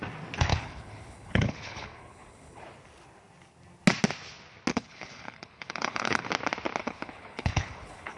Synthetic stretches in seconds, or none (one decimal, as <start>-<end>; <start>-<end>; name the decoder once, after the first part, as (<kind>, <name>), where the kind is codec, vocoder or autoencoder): 0.5-2.6 (codec, HILCodec); 4.7-6.3; 6.8-8.2